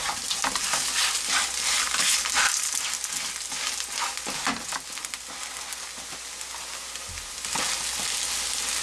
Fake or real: real